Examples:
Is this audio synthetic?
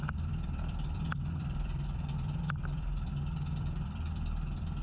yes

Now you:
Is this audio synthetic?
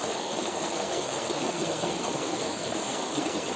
yes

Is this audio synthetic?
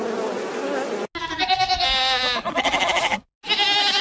no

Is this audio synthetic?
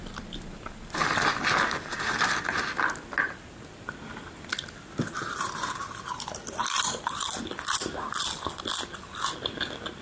no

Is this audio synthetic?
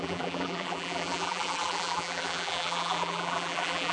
yes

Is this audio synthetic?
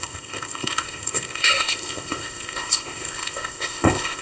yes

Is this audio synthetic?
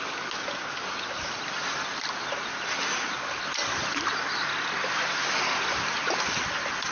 no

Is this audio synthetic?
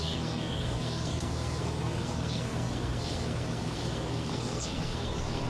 yes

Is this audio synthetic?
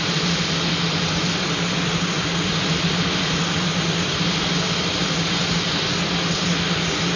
no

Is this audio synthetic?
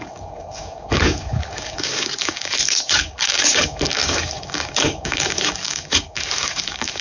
yes